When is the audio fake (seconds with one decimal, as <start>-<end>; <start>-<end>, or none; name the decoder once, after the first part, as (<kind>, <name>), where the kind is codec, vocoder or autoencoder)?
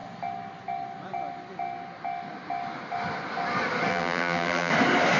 3.9-4.7 (vocoder, BigVGAN v2)